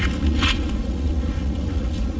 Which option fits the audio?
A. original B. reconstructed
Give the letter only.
B